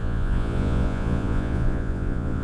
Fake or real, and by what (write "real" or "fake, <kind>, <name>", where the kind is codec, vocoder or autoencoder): fake, vocoder, Vocos